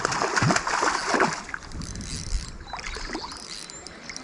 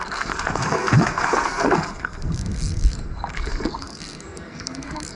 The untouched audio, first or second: first